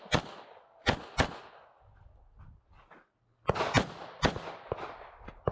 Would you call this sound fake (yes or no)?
no